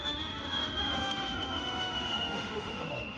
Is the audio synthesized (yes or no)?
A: yes